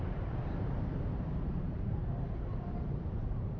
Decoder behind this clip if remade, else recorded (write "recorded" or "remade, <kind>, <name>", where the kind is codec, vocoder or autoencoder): remade, vocoder, BigVGAN v2